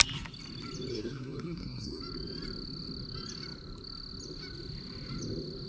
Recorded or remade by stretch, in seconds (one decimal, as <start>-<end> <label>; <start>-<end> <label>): 0.0-0.9 recorded; 0.9-2.0 remade; 2.0-5.7 recorded